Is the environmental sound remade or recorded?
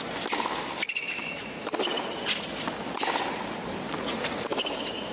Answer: recorded